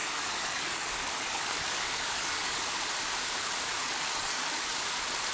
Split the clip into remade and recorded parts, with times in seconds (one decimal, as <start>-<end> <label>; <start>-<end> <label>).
0.0-2.8 remade; 2.8-3.8 recorded; 3.8-4.7 remade; 4.7-5.3 recorded